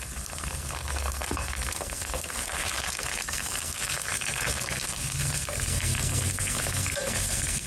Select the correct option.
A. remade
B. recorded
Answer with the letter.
A